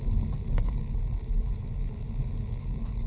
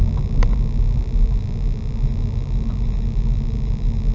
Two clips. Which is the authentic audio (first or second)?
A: second